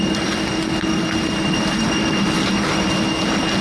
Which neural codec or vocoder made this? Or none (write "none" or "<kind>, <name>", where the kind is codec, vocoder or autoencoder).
none